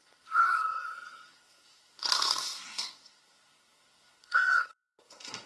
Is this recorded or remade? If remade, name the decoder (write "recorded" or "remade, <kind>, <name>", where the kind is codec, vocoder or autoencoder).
remade, codec, SNAC